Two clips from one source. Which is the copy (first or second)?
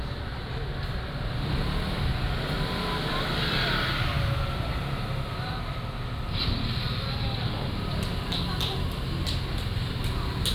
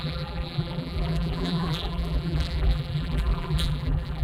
second